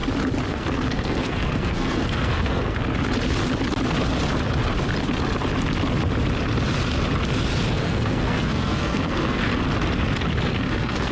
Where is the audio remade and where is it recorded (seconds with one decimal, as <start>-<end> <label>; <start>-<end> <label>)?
0.0-0.5 recorded; 0.5-2.8 remade; 2.8-7.7 recorded; 7.7-9.5 remade; 9.5-10.5 recorded; 10.5-11.1 remade